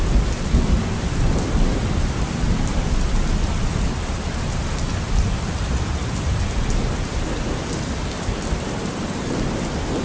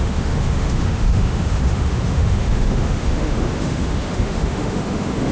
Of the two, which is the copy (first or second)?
second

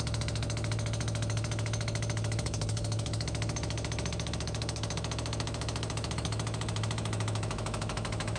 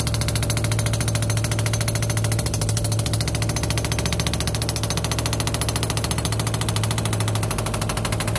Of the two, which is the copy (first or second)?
first